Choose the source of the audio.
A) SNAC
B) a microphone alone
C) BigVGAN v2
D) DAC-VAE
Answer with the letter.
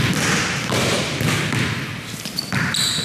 B